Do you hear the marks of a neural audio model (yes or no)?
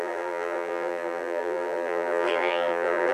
yes